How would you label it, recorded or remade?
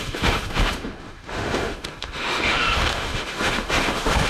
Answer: remade